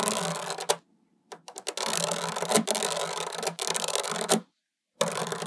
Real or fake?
real